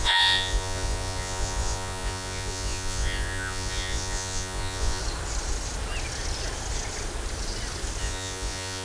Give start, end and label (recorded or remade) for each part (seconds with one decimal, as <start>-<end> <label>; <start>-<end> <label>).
0.0-5.0 remade; 5.0-8.0 recorded; 8.0-8.8 remade